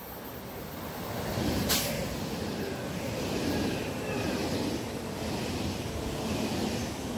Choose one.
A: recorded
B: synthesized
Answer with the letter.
A